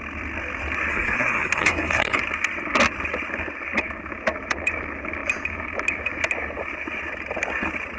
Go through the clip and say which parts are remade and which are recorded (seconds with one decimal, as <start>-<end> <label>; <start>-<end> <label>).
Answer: 0.0-0.9 recorded; 0.9-2.2 remade; 2.2-8.0 recorded